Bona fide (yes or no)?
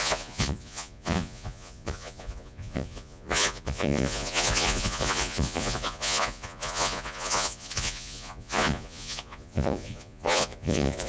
no